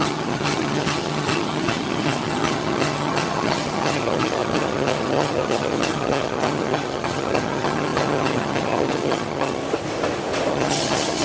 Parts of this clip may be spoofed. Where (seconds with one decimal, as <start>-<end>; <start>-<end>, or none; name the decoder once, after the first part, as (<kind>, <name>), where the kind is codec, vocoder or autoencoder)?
0.0-9.6 (vocoder, HiFi-GAN); 10.5-11.2